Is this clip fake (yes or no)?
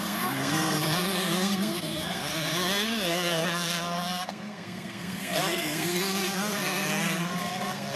yes